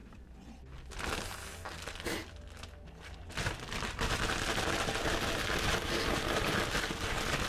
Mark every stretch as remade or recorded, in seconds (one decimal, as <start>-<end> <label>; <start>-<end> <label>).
0.0-7.5 recorded